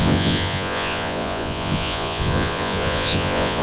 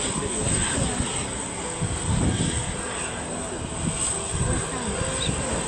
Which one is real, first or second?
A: second